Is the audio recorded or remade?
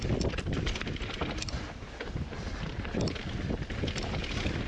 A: recorded